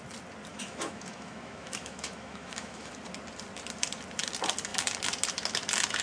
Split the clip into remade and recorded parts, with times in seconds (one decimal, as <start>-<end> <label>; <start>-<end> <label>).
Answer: 0.0-0.5 recorded; 0.5-2.9 remade; 2.9-6.0 recorded